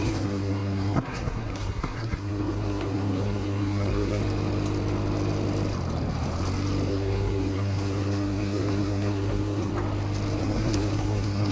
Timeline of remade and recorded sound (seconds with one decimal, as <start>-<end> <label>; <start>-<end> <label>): 0.0-4.2 remade; 4.2-6.9 recorded; 6.9-9.7 remade; 9.7-10.4 recorded; 10.4-11.5 remade